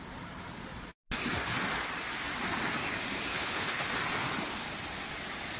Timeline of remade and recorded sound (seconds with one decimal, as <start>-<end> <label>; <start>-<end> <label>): 0.0-3.3 recorded; 3.3-3.9 remade; 3.9-5.6 recorded